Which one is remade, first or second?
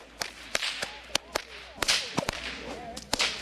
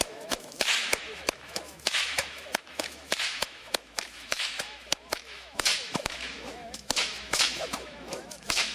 second